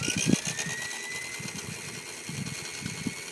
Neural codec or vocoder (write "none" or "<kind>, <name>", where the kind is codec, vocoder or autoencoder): none